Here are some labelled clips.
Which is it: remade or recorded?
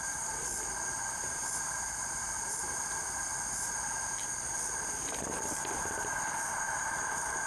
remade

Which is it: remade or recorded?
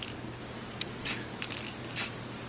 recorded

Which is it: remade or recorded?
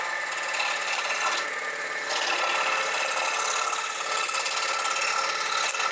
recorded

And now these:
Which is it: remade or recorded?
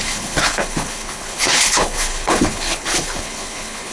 remade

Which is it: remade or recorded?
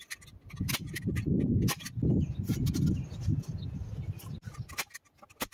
recorded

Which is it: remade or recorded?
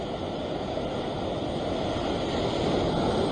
recorded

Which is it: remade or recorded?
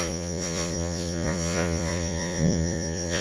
remade